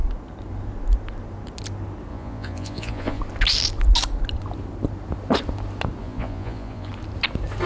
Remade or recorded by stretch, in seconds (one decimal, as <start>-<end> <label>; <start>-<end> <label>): 0.0-2.1 recorded; 2.1-3.2 remade; 3.2-6.0 recorded; 6.0-6.9 remade; 6.9-7.7 recorded